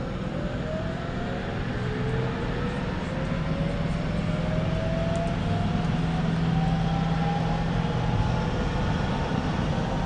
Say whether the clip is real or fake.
real